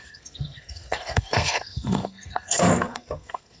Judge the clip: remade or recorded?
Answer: remade